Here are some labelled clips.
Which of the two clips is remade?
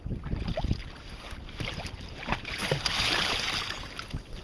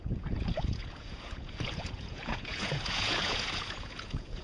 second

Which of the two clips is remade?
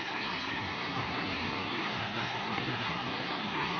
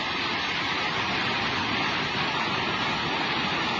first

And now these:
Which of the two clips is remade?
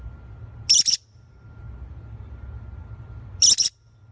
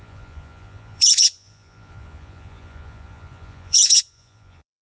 second